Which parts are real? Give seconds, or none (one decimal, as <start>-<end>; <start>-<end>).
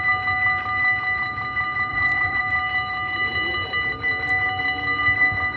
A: 0.0-1.9; 2.4-5.6